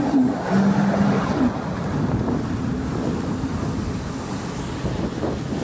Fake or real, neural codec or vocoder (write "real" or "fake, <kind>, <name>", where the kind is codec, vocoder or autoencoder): real